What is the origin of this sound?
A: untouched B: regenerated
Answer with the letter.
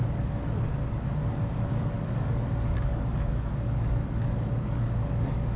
B